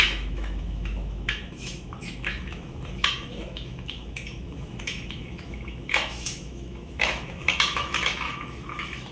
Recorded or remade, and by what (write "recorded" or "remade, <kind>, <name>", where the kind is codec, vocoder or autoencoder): remade, autoencoder, DAC-VAE